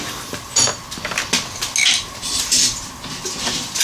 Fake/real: real